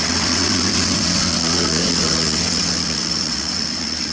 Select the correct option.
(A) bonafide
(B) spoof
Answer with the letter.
B